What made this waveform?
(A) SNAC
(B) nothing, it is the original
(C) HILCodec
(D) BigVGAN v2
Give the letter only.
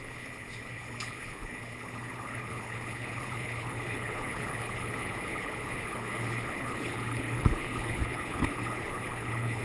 C